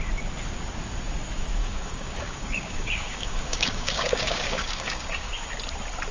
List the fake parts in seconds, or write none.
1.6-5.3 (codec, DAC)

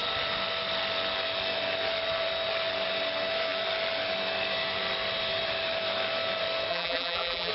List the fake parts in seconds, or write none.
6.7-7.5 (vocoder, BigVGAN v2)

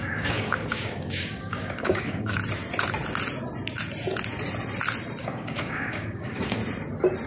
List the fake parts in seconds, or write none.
0.0-2.4 (codec, DAC); 5.2-6.6

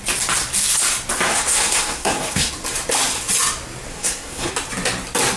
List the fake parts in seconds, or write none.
1.3-2.5 (codec, SNAC); 3.9-4.5